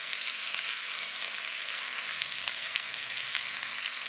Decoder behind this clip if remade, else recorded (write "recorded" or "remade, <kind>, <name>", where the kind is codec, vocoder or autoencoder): remade, codec, SNAC